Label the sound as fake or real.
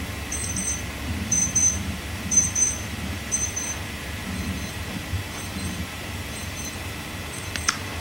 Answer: fake